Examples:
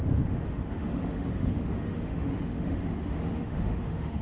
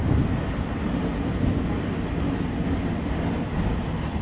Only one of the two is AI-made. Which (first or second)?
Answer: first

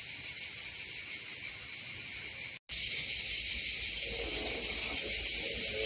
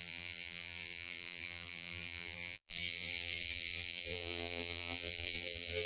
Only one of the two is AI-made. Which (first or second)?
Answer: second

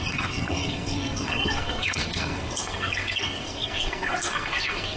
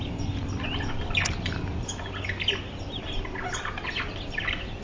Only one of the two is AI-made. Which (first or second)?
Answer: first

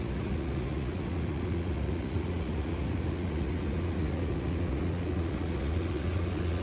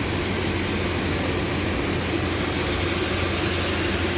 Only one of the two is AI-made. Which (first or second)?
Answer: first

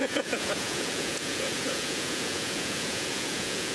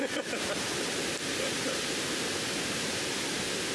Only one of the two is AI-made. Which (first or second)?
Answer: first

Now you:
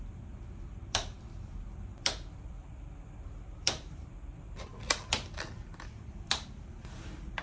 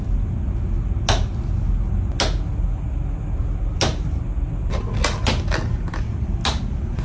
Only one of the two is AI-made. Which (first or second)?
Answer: first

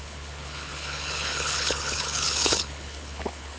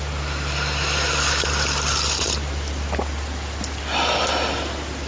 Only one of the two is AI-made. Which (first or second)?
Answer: first